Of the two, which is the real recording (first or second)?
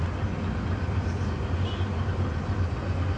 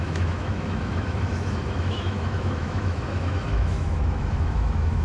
first